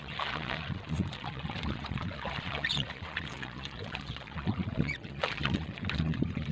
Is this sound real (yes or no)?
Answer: no